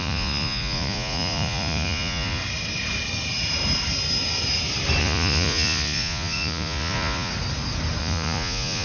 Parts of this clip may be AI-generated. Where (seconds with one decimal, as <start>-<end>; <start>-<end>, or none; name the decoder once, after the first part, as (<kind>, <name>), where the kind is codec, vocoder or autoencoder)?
0.0-2.4 (vocoder, Vocos); 5.0-7.3; 8.0-8.8